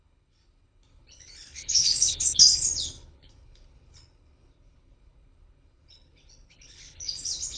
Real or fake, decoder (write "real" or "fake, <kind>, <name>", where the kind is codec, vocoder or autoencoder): fake, codec, HILCodec